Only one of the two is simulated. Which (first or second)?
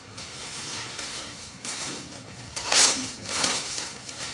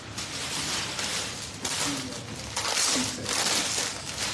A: first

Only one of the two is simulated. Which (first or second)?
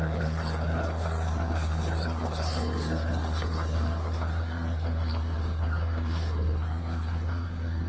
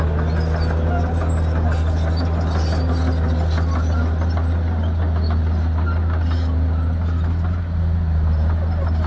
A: first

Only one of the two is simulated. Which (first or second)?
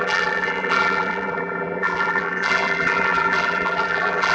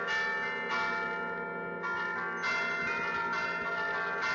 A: first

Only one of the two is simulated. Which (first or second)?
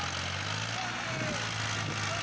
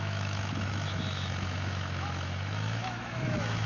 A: second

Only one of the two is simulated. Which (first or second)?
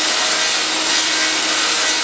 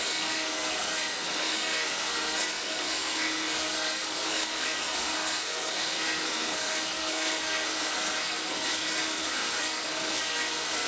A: second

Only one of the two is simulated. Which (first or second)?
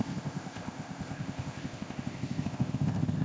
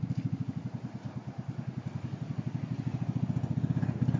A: first